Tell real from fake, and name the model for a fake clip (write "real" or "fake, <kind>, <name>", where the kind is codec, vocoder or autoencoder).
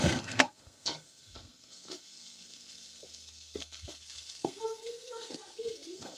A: fake, codec, SNAC